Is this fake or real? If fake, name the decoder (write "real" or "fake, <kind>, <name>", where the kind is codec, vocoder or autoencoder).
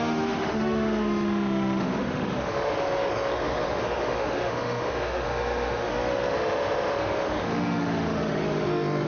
fake, autoencoder, DAC-VAE